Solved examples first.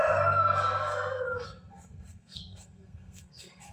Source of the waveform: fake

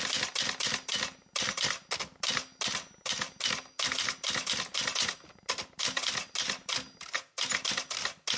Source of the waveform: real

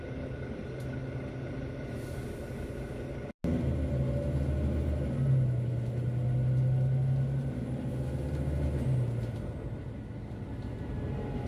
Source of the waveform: real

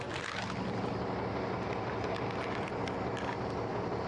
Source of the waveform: real